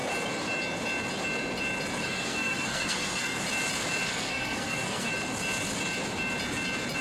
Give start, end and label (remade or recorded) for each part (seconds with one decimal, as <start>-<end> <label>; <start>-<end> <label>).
0.0-2.0 recorded; 2.0-3.4 remade; 3.4-4.1 recorded; 4.1-5.1 remade; 5.1-7.0 recorded